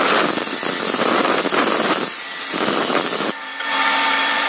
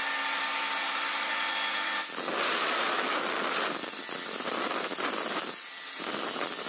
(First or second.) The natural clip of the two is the second